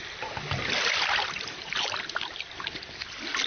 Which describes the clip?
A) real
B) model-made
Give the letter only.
A